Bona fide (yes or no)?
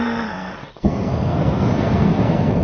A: no